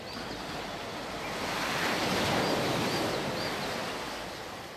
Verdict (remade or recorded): recorded